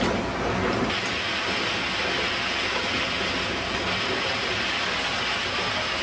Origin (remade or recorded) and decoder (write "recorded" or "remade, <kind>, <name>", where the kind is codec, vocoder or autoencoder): recorded